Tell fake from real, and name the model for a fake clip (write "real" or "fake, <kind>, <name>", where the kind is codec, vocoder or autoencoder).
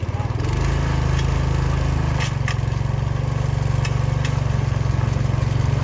real